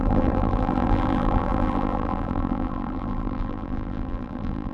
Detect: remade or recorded remade